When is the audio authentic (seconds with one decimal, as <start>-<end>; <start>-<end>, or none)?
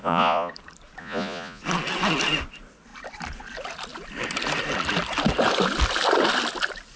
0.5-1.0; 1.6-7.0